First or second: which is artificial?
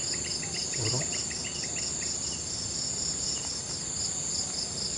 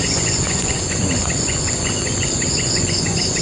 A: second